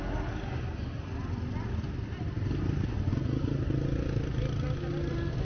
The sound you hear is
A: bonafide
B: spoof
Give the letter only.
A